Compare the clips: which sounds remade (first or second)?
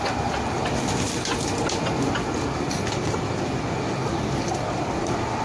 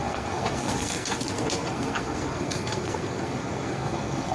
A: second